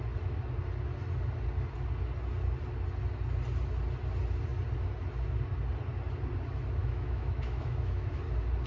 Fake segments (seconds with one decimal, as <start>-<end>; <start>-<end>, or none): 6.8-8.2